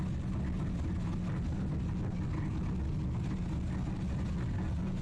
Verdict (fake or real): real